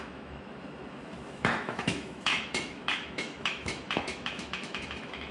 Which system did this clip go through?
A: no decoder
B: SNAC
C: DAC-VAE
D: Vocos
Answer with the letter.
C